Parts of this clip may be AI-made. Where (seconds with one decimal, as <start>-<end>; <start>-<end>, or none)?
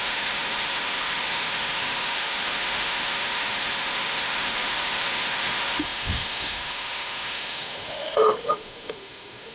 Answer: 0.0-9.5